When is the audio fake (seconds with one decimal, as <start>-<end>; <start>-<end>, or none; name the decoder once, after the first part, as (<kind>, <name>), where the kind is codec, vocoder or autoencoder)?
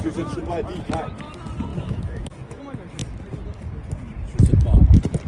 1.7-2.6 (autoencoder, DAC-VAE)